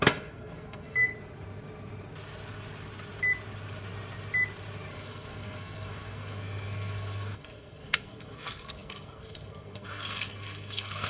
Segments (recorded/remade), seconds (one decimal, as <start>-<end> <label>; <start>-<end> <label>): 0.0-1.1 remade; 1.1-4.9 recorded; 4.9-11.1 remade